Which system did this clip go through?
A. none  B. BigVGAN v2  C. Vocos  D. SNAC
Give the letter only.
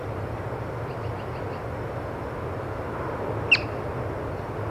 A